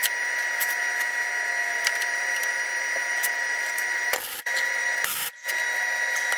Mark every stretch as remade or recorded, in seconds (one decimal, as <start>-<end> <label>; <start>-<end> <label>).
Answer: 0.0-0.8 remade; 0.8-1.7 recorded; 1.7-5.5 remade; 5.5-6.4 recorded